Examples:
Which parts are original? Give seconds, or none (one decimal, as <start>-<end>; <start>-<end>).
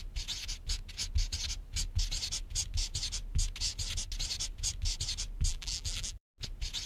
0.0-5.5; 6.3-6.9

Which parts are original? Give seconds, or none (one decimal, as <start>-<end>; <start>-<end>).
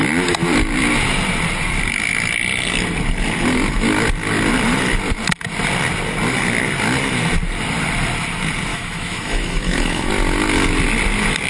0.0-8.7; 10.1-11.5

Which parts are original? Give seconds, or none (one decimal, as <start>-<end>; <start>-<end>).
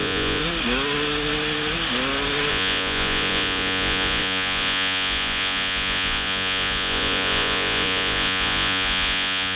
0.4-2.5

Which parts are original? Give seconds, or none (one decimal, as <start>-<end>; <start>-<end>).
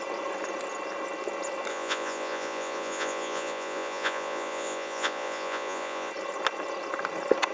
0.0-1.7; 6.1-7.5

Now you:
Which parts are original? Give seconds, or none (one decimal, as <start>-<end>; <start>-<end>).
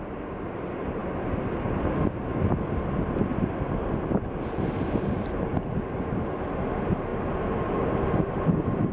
0.0-8.9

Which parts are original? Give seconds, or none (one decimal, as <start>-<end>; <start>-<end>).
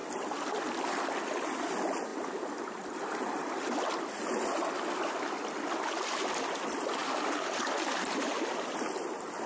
0.0-9.5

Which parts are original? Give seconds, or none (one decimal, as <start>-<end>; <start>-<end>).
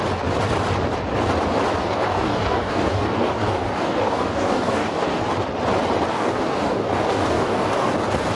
0.0-1.8; 5.2-6.1; 7.9-8.3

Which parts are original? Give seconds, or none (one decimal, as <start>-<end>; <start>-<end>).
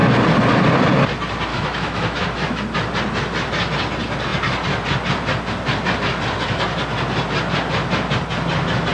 0.0-1.5; 2.6-8.9